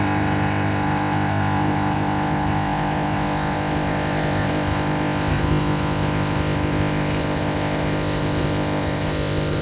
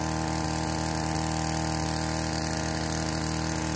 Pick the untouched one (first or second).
second